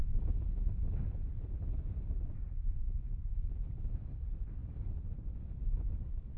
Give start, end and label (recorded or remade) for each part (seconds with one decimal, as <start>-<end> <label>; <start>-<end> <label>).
0.0-1.3 recorded; 1.3-2.9 remade; 2.9-4.6 recorded; 4.6-5.4 remade; 5.4-6.4 recorded